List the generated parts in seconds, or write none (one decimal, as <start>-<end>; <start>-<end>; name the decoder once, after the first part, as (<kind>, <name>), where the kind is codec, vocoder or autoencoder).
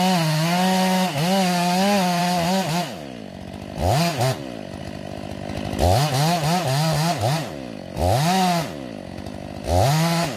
none